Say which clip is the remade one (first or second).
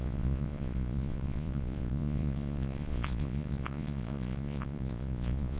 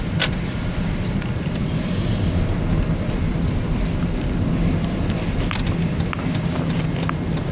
first